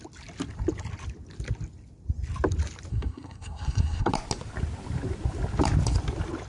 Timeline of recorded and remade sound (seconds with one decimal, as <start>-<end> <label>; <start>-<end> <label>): 0.0-2.9 recorded; 2.9-4.1 remade; 4.1-6.5 recorded